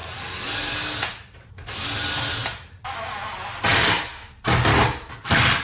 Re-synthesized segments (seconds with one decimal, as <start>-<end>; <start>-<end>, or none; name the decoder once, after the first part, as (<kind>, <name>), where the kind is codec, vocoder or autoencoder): none